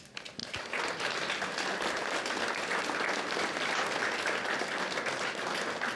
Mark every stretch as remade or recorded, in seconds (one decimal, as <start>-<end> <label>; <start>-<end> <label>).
0.0-6.0 recorded